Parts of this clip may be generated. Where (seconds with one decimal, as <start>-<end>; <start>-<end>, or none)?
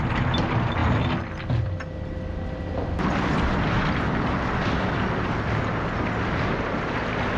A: none